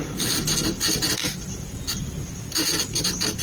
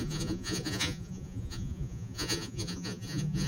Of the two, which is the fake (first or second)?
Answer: second